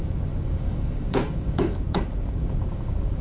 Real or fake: fake